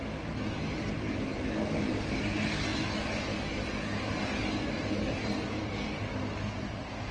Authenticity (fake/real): real